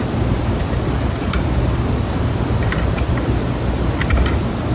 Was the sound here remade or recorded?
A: recorded